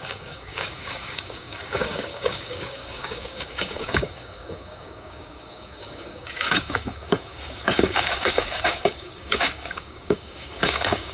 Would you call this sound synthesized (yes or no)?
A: yes